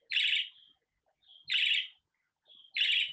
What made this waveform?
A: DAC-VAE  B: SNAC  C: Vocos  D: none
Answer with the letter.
D